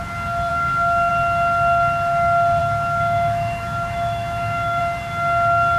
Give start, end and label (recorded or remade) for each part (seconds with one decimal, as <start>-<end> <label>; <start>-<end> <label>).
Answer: 0.0-0.5 recorded; 0.5-1.1 remade; 1.1-2.6 recorded; 2.6-4.8 remade; 4.8-5.8 recorded